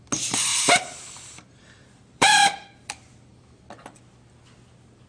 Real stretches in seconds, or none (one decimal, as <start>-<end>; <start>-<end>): 0.0-0.5; 3.6-5.1